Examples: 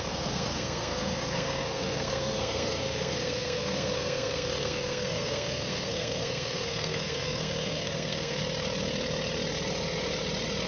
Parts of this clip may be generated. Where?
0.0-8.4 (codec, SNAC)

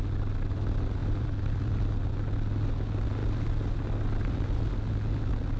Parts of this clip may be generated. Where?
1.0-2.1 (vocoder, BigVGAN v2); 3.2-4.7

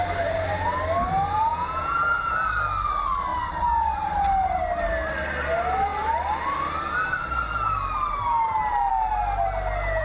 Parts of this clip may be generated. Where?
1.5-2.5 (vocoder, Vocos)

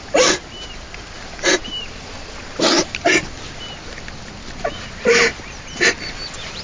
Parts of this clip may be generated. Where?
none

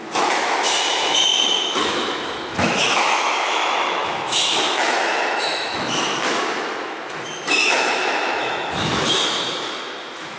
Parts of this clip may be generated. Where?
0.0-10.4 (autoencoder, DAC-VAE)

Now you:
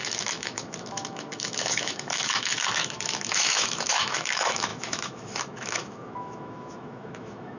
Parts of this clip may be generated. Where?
0.0-7.6 (autoencoder, DAC-VAE)

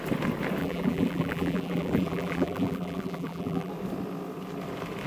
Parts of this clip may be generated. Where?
0.6-3.7 (vocoder, BigVGAN v2)